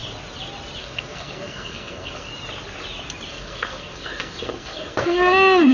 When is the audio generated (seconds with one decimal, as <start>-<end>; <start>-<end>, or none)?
0.8-2.3; 3.3-5.7